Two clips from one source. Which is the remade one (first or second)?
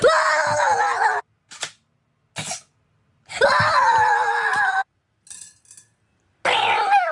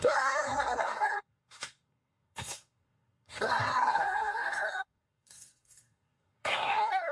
second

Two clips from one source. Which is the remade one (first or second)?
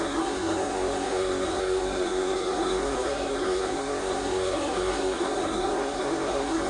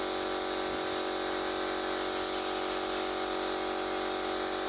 first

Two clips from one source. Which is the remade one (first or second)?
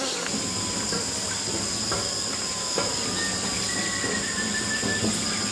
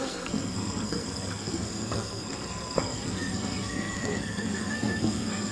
second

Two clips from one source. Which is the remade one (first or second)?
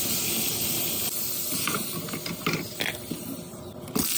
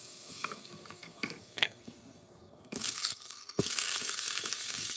second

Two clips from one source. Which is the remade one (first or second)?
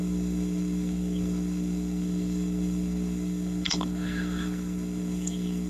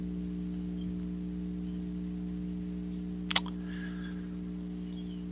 first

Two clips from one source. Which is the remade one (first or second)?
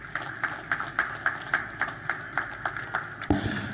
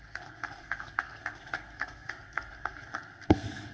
second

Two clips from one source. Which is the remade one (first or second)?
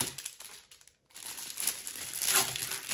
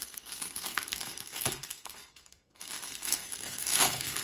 second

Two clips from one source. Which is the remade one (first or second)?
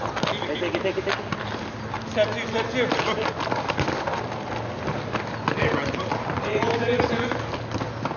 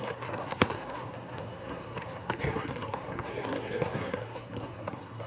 second